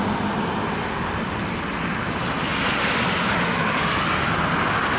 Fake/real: real